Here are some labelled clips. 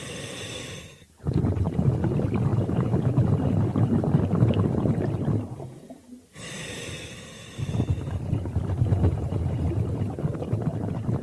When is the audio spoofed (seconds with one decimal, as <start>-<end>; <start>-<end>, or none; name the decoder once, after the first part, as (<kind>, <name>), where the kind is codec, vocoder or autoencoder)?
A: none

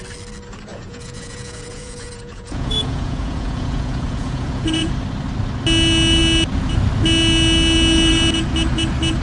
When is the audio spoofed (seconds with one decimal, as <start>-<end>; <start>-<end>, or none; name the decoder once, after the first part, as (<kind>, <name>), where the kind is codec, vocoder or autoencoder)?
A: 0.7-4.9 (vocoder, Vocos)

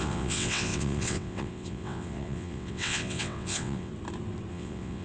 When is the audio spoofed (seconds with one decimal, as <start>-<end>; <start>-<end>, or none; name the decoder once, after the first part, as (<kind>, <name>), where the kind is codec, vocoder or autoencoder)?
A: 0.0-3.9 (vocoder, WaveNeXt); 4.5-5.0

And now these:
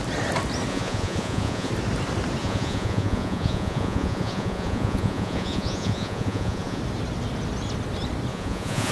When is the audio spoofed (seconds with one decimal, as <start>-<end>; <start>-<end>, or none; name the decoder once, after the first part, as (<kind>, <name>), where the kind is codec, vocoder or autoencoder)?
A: 0.7-1.7 (vocoder, Vocos); 2.4-6.8; 8.3-8.9